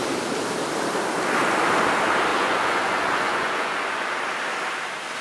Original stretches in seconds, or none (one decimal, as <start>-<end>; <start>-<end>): 0.0-2.3; 4.1-5.2